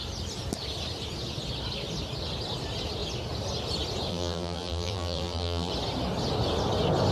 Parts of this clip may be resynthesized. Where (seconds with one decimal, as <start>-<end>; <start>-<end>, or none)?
4.1-5.7